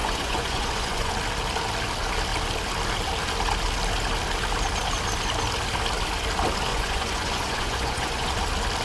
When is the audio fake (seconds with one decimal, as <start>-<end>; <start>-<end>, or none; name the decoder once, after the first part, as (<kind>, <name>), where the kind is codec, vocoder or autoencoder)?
0.0-1.1 (vocoder, Vocos); 6.7-8.3